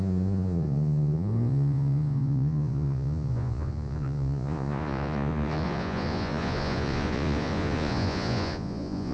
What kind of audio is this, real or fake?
fake